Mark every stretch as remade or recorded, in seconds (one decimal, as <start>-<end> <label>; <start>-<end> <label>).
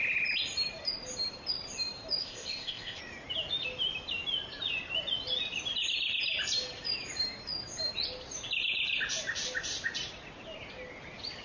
0.0-2.2 recorded; 2.2-3.0 remade; 3.0-11.4 recorded